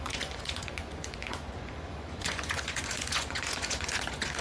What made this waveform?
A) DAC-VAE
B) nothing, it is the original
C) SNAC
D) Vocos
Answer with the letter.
D